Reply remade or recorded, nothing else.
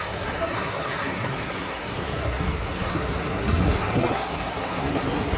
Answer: remade